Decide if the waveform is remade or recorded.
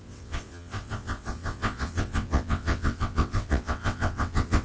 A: remade